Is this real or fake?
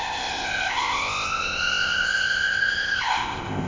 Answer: fake